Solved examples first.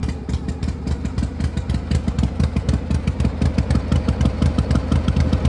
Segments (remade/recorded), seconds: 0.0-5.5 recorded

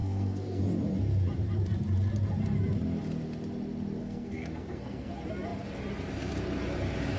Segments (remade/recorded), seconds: 0.0-0.6 remade; 0.6-4.0 recorded; 4.0-5.1 remade; 5.1-7.2 recorded

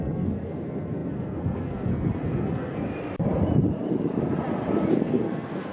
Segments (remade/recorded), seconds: 0.0-2.9 remade; 2.9-4.9 recorded; 4.9-5.7 remade

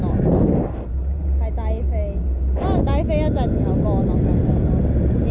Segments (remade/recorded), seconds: 0.0-5.3 recorded